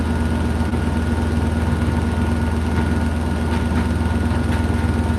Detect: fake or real real